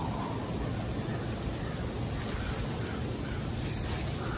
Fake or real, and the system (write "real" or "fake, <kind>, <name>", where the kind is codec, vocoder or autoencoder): real